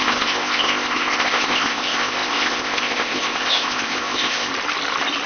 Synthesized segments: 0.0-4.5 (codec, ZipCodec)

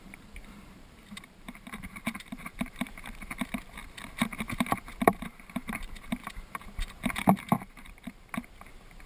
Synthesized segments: 0.0-3.8 (vocoder, BigVGAN v2); 5.0-9.1